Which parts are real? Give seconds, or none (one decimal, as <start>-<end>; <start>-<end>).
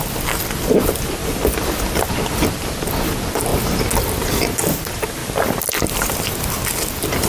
0.0-1.2; 2.1-5.2; 6.4-7.3